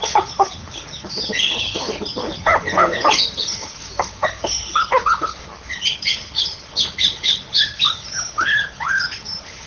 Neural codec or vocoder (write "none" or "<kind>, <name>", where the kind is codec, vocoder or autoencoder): codec, HILCodec